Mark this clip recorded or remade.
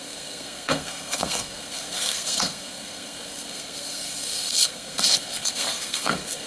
remade